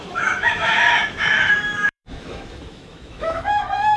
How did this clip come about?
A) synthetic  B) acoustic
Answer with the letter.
A